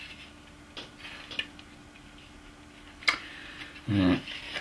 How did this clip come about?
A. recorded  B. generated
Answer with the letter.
A